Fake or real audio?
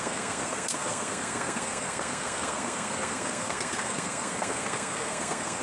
fake